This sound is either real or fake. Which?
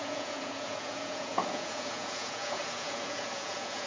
fake